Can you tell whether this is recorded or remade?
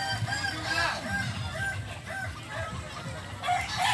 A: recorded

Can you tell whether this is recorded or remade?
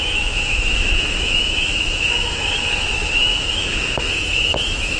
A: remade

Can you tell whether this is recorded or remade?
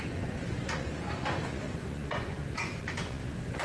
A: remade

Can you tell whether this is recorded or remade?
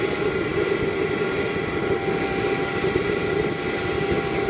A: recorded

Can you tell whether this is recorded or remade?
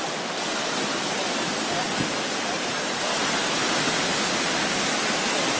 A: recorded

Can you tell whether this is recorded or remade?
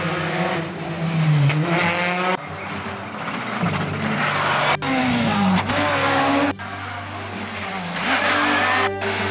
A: recorded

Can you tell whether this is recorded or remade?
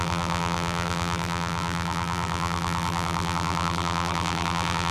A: remade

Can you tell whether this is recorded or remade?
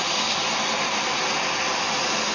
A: recorded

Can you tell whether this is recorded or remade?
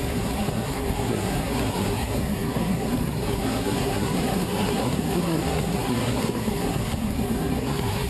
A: remade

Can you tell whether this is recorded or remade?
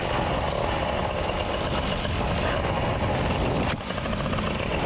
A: recorded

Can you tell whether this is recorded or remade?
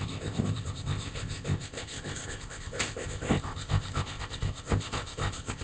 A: remade